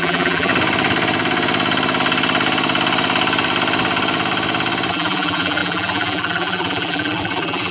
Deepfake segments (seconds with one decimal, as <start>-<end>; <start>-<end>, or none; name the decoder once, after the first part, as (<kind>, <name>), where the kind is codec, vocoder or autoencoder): 0.0-0.5 (vocoder, BigVGAN v2); 4.9-7.7